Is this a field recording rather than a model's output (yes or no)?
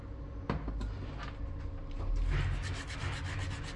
yes